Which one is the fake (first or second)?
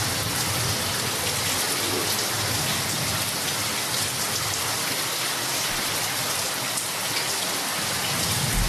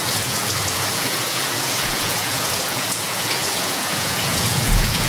second